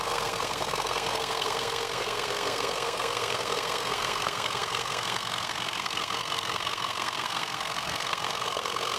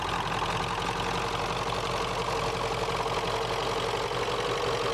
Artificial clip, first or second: first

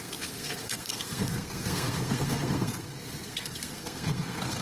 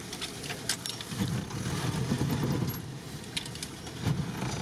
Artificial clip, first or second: first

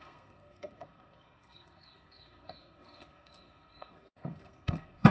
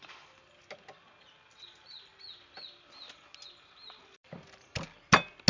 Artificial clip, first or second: first